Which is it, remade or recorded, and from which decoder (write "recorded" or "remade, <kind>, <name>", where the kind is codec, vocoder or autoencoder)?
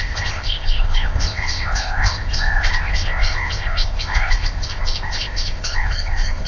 remade, codec, ZipCodec